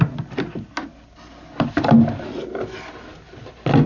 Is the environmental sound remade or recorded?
recorded